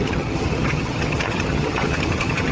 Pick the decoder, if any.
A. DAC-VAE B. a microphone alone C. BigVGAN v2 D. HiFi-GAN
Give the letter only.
D